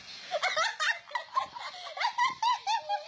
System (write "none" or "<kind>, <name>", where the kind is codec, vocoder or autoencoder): none